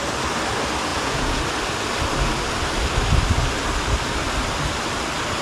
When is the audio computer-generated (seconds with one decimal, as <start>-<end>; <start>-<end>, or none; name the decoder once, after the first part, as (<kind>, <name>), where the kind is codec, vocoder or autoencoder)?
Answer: 0.9-1.4 (vocoder, Vocos)